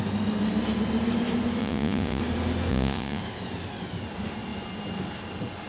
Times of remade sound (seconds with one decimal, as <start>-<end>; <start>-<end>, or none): 1.6-2.2; 2.7-3.2